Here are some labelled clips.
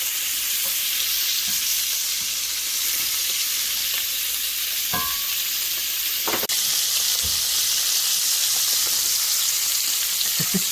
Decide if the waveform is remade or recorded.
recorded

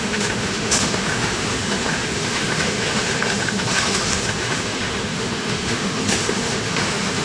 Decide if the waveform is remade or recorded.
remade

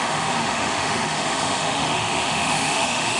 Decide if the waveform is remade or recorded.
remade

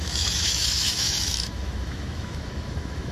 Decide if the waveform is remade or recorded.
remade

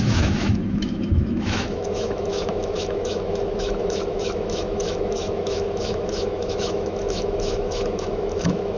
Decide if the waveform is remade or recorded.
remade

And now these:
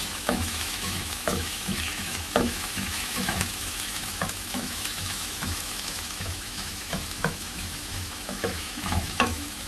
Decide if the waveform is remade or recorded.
remade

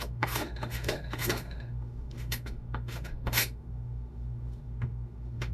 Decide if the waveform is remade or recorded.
remade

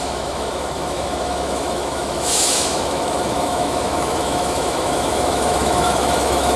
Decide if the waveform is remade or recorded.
remade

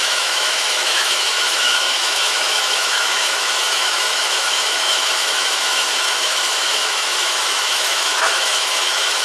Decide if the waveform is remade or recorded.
remade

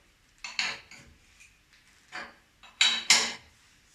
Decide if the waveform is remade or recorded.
recorded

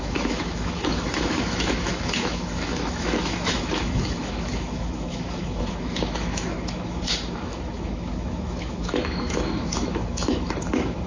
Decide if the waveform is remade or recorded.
remade